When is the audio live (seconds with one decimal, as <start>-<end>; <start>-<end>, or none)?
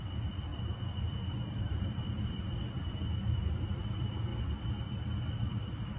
4.3-4.8